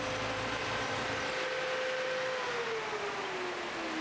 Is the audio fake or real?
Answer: real